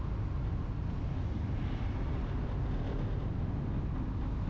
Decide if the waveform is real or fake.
real